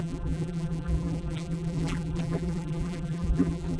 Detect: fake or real fake